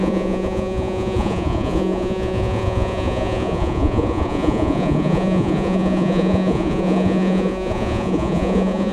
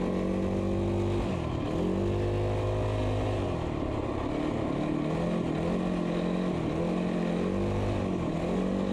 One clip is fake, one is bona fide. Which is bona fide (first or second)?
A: second